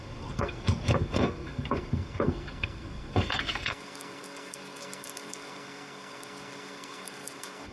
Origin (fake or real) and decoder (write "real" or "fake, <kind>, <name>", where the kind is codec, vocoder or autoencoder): fake, codec, SNAC